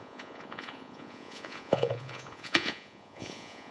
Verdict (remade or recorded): remade